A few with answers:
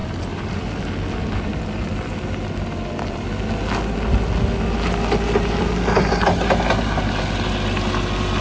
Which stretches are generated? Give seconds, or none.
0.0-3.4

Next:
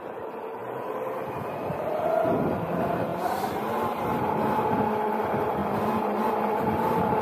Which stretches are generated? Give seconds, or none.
0.0-5.6; 6.3-7.2

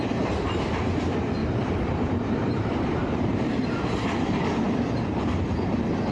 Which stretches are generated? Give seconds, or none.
1.4-4.0

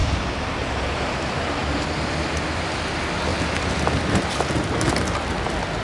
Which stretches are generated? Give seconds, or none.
0.0-0.6; 3.3-5.8